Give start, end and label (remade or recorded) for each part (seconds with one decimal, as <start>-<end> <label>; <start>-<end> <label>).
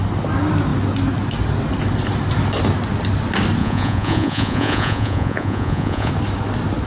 0.0-3.6 recorded; 3.6-6.1 remade; 6.1-6.9 recorded